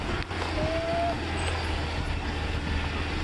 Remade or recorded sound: recorded